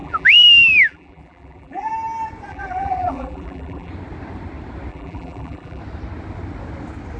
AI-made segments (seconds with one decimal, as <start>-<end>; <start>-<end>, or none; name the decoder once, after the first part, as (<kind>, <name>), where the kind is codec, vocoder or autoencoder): 0.0-1.9 (vocoder, BigVGAN v2); 2.5-3.9; 4.9-5.8